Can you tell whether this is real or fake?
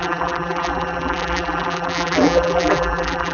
fake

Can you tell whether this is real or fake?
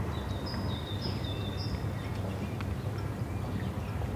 real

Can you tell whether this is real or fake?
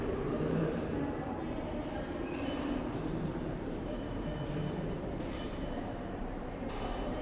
fake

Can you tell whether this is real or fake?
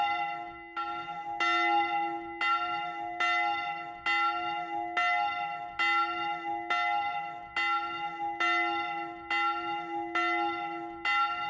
real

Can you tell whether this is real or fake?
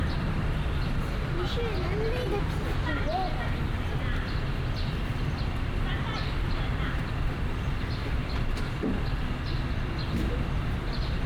real